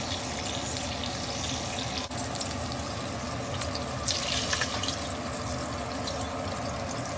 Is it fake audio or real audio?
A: real